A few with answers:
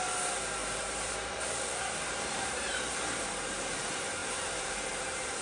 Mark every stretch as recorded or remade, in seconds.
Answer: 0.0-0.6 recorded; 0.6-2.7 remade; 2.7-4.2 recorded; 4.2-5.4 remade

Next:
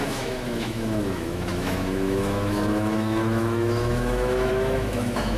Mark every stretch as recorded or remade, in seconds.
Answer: 0.0-5.4 remade

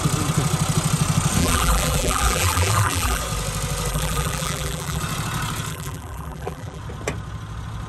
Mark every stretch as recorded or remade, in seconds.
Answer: 0.0-1.4 recorded; 1.4-3.2 remade; 3.2-3.9 recorded; 3.9-5.0 remade; 5.0-5.7 recorded; 5.7-6.8 remade; 6.8-7.9 recorded

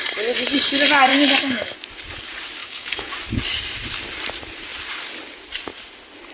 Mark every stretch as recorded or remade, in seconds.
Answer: 0.0-1.1 recorded; 1.1-1.7 remade; 1.7-2.6 recorded; 2.6-3.1 remade; 3.1-6.3 recorded

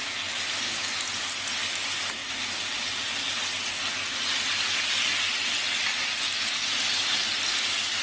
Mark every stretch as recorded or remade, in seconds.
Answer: 0.0-8.0 recorded

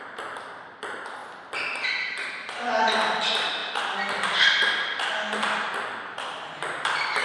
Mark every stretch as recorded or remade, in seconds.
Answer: 0.0-1.2 remade; 1.2-2.7 recorded; 2.7-3.6 remade; 3.6-6.6 recorded; 6.6-7.2 remade

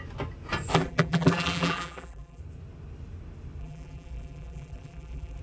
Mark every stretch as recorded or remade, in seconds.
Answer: 0.0-0.7 recorded; 0.7-2.4 remade; 2.4-3.6 recorded; 3.6-5.4 remade

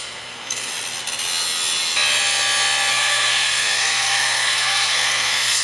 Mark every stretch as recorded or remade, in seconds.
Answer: 0.0-0.7 remade; 0.7-2.9 recorded; 2.9-5.6 remade